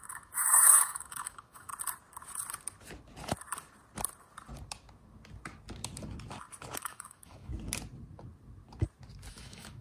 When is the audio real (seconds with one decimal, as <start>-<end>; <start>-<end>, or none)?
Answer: 1.7-6.8; 7.5-9.3

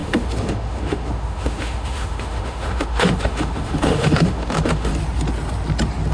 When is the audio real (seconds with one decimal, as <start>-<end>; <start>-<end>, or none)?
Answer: 4.9-6.1

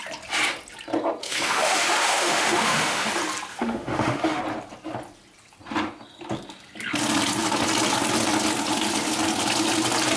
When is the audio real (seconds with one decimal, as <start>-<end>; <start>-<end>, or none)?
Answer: 0.0-1.2; 3.1-3.5; 4.4-10.2

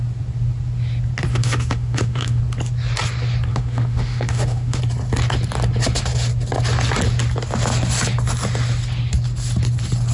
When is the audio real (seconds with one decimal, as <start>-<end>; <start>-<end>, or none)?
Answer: 0.0-1.3; 2.4-3.5; 4.8-10.1

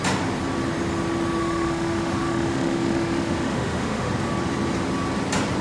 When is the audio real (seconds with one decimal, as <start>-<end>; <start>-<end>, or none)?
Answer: 0.0-1.4; 4.1-5.6